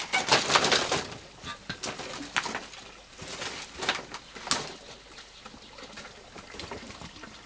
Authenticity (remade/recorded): recorded